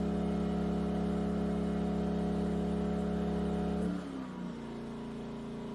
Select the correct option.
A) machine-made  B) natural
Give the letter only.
B